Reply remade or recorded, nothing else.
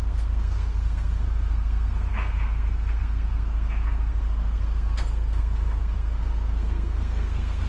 remade